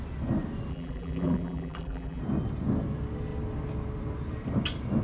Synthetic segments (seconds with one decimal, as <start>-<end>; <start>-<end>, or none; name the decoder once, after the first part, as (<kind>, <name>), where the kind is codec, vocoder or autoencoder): 0.7-2.2 (vocoder, BigVGAN v2)